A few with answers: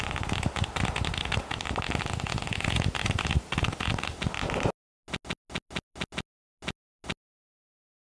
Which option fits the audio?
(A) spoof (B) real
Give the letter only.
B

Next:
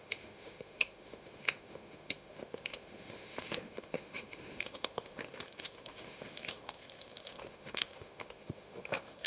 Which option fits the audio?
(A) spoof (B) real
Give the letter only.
A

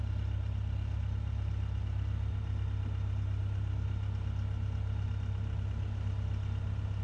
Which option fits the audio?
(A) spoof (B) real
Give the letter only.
B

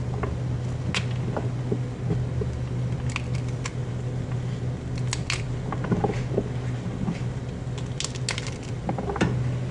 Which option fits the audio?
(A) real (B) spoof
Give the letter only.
A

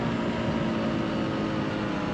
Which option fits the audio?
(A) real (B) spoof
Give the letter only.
A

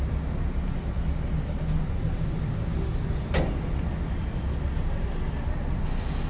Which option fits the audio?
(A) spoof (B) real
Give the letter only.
B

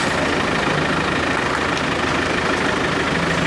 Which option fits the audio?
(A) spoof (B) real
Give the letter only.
B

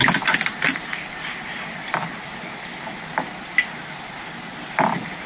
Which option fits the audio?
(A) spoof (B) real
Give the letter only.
B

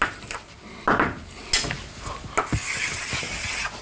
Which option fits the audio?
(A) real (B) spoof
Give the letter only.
A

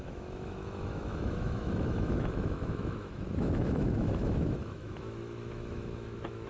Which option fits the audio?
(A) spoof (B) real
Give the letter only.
A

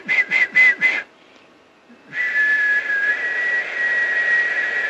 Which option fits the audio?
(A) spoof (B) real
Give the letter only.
B